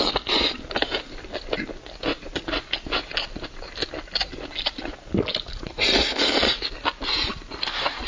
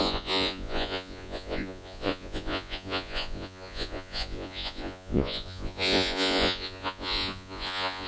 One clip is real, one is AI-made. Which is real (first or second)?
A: first